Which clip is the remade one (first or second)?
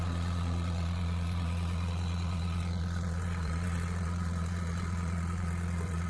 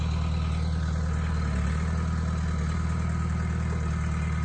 first